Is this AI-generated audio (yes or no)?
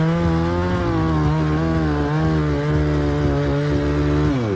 no